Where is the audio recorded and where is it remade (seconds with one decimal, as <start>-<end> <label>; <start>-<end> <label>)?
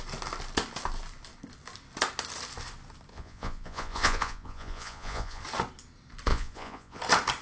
0.0-3.1 recorded; 3.1-5.4 remade; 5.4-6.3 recorded; 6.3-7.0 remade; 7.0-7.4 recorded